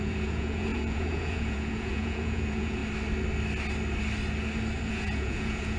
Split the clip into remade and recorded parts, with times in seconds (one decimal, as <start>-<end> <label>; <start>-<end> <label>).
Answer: 0.0-2.8 remade; 2.8-4.9 recorded; 4.9-5.8 remade